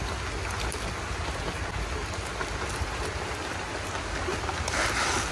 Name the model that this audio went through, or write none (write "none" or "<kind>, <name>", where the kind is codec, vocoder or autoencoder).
none